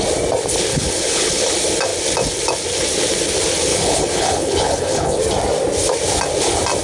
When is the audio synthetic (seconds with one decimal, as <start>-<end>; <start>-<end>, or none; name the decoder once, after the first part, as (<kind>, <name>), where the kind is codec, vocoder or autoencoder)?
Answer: 0.7-1.5 (codec, HILCodec); 3.7-5.2